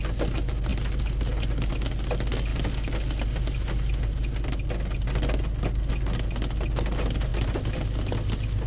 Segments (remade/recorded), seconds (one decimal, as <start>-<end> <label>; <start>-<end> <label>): 0.0-8.7 recorded